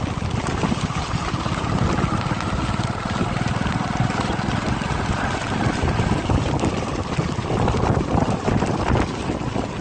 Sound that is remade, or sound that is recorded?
recorded